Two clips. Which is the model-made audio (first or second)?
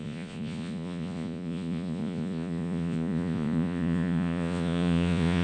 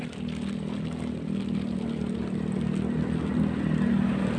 first